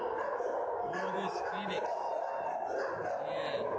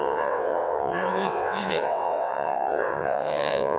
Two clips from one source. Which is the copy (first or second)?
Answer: second